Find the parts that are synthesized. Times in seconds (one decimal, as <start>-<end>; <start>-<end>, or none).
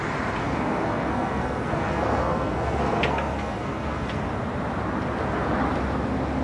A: 0.4-4.2